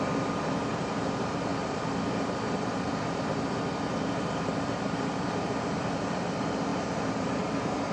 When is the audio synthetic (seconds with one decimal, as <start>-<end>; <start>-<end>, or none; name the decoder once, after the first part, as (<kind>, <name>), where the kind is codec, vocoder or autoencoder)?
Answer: 0.0-1.5 (vocoder, BigVGAN v2); 2.6-7.9